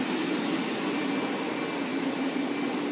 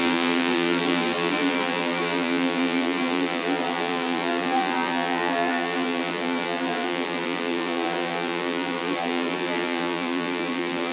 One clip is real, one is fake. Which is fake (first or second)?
second